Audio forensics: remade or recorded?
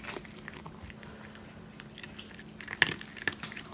recorded